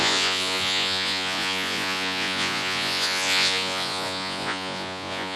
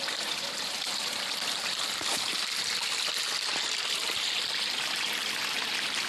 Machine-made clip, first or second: first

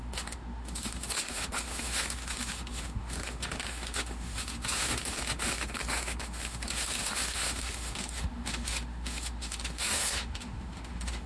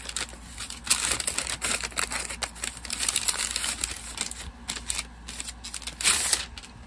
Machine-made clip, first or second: first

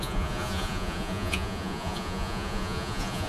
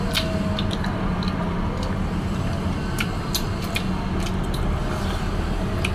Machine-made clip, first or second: first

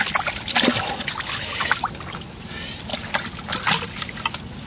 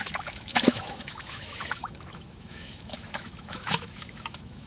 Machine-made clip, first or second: second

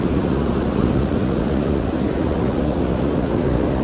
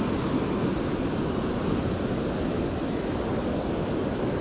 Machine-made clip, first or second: first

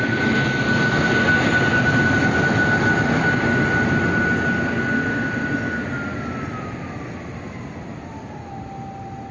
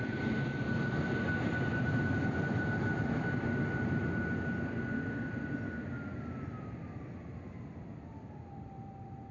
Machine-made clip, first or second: second